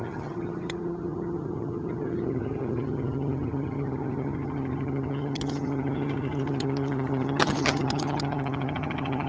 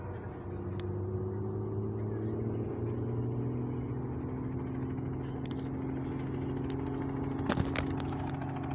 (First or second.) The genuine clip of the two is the second